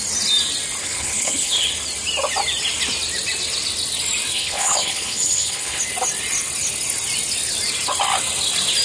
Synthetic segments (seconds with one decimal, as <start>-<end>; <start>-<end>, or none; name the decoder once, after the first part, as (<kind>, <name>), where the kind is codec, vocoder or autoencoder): 0.8-1.7 (codec, HILCodec); 4.3-5.8